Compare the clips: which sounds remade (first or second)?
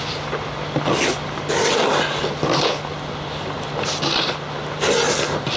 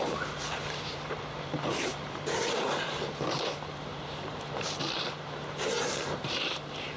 second